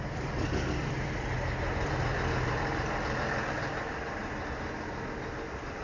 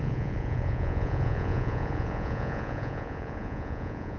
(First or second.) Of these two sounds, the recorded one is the first